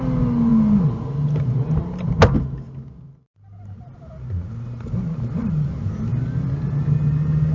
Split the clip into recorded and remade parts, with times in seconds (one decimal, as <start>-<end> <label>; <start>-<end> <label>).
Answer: 0.0-7.5 recorded